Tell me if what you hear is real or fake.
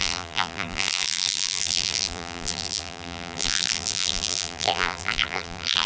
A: fake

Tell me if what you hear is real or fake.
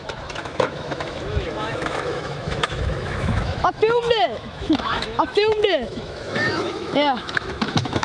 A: fake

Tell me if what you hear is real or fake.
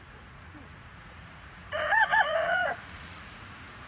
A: fake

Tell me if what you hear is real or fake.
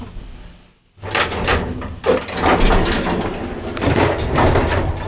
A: real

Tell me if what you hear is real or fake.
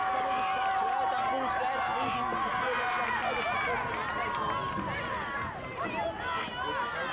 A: real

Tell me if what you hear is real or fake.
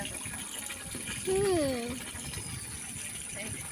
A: real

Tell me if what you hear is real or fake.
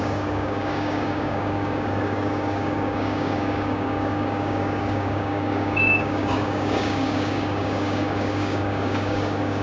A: fake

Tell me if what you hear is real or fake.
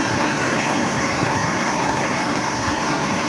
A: fake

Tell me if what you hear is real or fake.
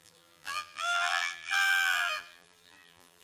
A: fake